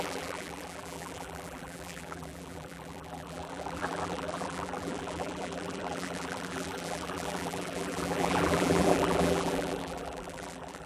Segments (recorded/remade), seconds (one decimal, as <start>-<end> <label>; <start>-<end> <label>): 0.0-10.9 remade